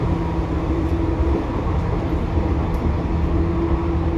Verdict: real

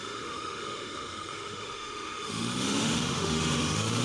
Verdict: fake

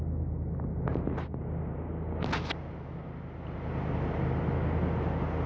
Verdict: real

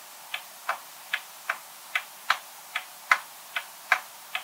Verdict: fake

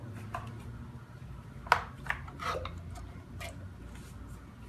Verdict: real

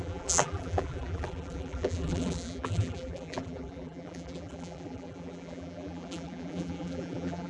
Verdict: fake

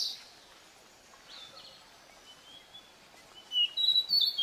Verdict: real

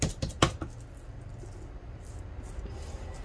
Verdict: real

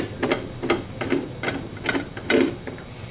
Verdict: real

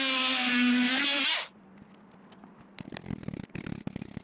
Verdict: real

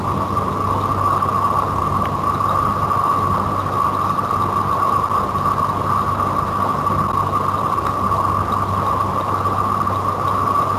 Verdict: real